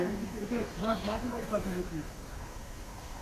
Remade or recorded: remade